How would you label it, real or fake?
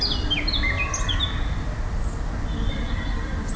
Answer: real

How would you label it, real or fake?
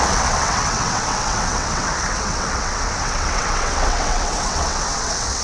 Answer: fake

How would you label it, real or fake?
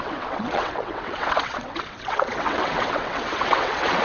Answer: fake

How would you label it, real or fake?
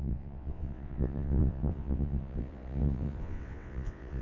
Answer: fake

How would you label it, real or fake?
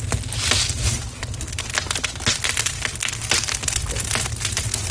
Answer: real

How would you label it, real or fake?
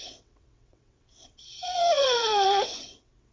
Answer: fake